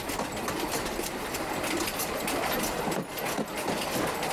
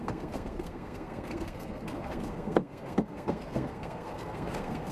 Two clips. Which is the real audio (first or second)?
first